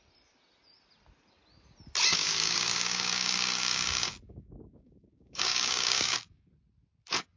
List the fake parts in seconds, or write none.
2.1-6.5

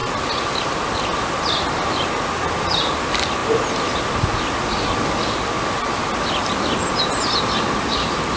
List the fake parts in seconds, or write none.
none

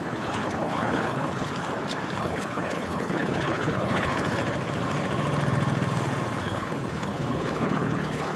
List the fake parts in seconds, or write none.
0.0-1.5; 2.2-4.4; 6.4-8.4

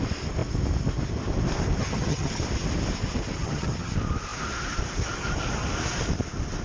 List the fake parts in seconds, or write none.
1.8-2.4; 3.4-3.9

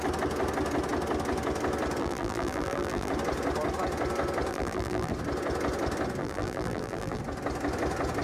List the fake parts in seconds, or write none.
2.0-3.1; 4.5-5.1; 6.2-7.2

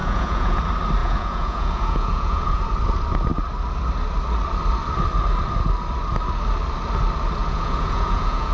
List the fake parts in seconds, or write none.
0.0-0.6; 1.0-2.6; 7.4-8.5

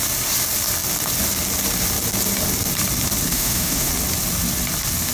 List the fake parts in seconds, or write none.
3.3-3.9

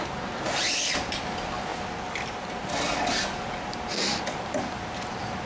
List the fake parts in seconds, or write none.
none